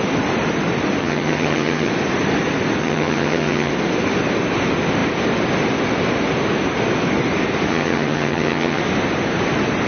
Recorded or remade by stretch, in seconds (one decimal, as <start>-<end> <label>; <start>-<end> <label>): 0.0-1.0 recorded; 1.0-1.9 remade; 1.9-2.8 recorded; 2.8-3.7 remade; 3.7-7.7 recorded; 7.7-8.8 remade; 8.8-9.9 recorded